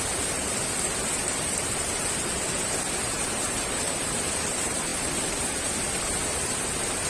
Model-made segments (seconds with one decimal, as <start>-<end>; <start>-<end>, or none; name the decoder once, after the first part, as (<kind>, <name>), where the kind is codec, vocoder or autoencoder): none